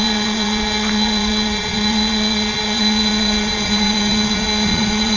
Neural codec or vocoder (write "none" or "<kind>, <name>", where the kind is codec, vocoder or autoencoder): vocoder, Vocos